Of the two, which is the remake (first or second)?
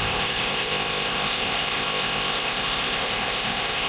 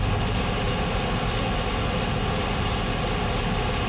first